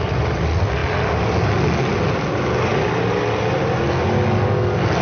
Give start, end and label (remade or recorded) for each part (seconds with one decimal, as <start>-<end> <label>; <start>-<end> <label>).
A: 0.0-5.0 recorded